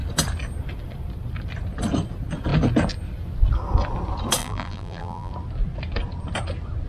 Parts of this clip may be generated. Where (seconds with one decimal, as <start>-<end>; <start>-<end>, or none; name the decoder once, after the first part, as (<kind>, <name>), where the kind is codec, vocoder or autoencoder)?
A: 4.4-5.3 (vocoder, BigVGAN v2)